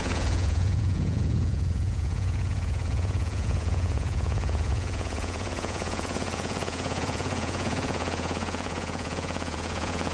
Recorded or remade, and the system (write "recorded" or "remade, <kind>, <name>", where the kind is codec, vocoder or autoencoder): remade, vocoder, Vocos